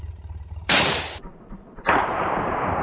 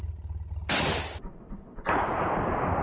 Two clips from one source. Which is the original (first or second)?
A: second